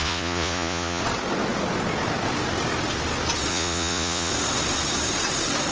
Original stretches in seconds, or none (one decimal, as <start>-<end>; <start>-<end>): 1.0-3.5; 4.3-5.7